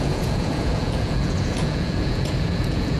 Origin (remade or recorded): remade